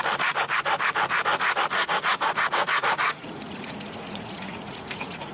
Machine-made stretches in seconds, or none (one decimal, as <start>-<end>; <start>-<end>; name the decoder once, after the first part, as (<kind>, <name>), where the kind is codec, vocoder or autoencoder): 1.8-5.3 (vocoder, Vocos)